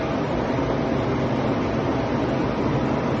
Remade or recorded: recorded